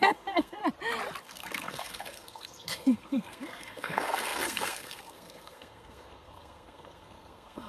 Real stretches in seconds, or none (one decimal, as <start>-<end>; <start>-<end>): 0.6-1.2